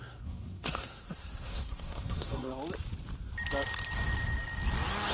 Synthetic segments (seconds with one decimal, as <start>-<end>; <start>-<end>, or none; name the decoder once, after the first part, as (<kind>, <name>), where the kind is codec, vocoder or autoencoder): 0.0-2.5 (codec, SNAC)

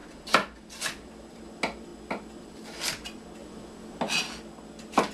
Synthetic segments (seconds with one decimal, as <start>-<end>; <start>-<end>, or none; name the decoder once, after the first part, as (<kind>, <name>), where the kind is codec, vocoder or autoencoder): 0.0-1.4 (vocoder, BigVGAN v2); 3.4-4.0

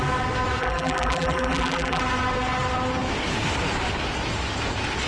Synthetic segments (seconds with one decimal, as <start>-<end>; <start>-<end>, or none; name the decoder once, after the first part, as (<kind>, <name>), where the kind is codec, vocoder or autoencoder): 0.6-2.0 (vocoder, BigVGAN v2)

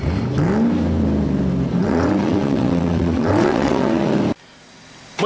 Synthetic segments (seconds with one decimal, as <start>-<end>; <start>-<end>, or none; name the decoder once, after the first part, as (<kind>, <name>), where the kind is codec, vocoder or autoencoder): 1.8-4.2 (vocoder, WaveNeXt)

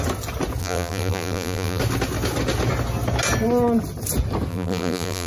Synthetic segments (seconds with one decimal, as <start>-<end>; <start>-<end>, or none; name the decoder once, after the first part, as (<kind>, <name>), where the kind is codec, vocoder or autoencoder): 0.6-1.8 (vocoder, BigVGAN v2); 4.5-5.3

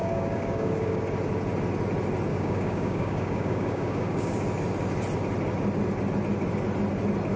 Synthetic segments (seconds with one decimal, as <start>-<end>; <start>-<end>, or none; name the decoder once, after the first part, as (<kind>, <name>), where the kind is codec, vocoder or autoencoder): 0.0-1.0 (codec, DAC); 2.3-4.4

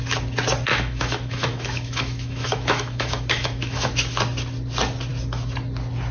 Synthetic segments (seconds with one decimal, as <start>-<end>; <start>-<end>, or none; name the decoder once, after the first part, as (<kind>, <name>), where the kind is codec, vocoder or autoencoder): 0.7-3.9 (autoencoder, DAC-VAE)